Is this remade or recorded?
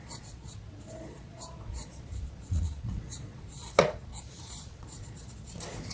remade